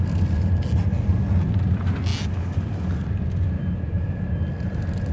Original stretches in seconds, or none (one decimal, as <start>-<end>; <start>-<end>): 0.0-5.1